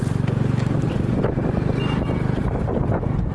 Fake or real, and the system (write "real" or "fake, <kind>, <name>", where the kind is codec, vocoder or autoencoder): real